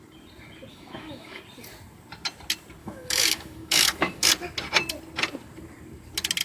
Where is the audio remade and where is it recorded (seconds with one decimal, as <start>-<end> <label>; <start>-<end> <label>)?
0.0-0.7 recorded; 0.7-1.4 remade; 1.4-2.8 recorded; 2.8-4.3 remade; 4.3-6.4 recorded